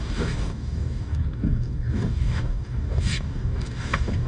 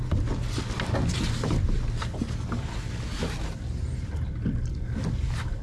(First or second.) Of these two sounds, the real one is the second